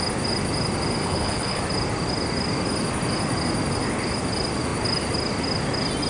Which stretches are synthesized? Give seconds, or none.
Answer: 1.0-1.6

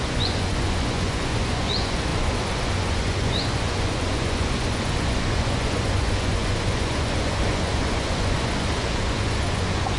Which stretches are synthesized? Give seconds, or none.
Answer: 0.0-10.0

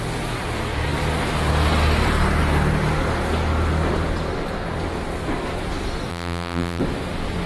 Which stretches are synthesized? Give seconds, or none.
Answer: 6.1-6.8